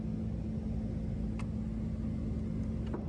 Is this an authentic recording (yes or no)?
yes